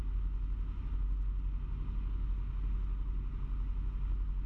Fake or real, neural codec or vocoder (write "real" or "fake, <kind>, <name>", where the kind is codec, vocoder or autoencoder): real